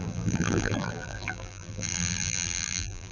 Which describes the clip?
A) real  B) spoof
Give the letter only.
B